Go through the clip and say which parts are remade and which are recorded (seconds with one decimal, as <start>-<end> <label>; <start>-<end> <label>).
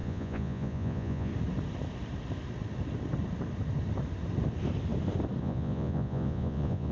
0.0-1.3 remade; 1.3-5.4 recorded; 5.4-6.9 remade